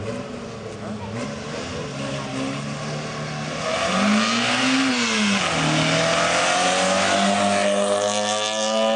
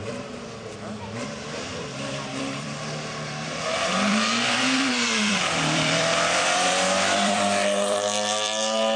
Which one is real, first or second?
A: first